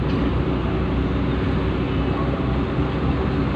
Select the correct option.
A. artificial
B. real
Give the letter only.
B